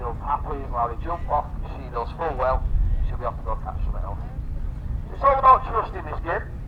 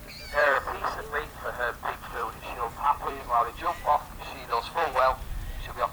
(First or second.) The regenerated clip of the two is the second